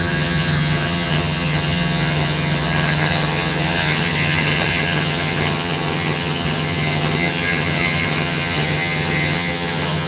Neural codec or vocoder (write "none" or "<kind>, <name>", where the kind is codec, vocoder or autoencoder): vocoder, HiFi-GAN